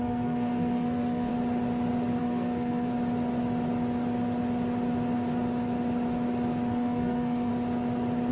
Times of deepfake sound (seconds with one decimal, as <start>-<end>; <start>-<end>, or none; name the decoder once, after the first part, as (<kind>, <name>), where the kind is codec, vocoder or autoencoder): 0.0-1.3 (codec, SNAC); 2.2-2.9; 6.7-7.5